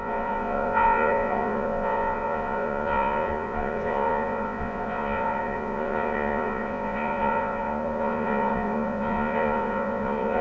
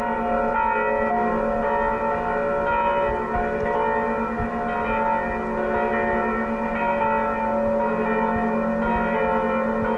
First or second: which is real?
second